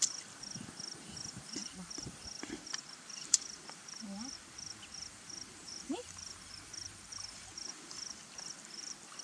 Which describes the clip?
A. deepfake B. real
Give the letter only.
A